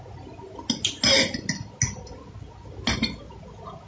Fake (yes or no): no